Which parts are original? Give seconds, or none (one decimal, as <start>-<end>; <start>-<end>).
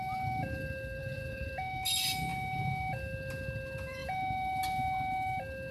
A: 0.0-1.0; 1.5-5.7